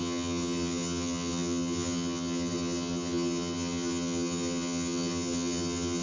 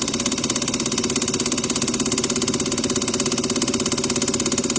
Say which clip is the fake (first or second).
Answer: first